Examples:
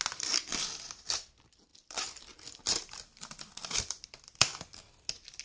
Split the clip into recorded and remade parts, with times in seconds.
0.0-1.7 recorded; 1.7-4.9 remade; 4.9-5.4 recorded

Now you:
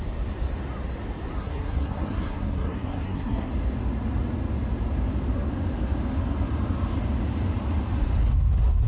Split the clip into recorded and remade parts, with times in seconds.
0.0-1.4 recorded; 1.4-3.5 remade; 3.5-8.9 recorded

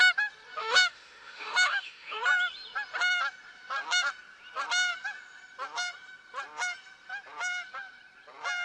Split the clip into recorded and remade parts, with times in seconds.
0.0-0.6 recorded; 0.6-2.2 remade; 2.2-8.6 recorded

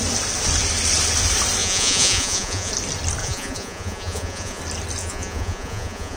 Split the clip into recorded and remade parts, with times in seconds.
0.0-1.6 recorded; 1.6-2.7 remade; 2.7-3.2 recorded; 3.2-4.6 remade; 4.6-5.0 recorded; 5.0-6.2 remade

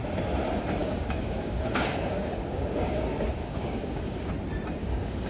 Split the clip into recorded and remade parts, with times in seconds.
0.0-0.8 recorded; 0.8-3.0 remade; 3.0-3.4 recorded; 3.4-4.3 remade; 4.3-4.8 recorded; 4.8-5.3 remade